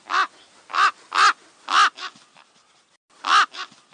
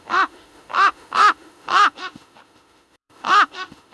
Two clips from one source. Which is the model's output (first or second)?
second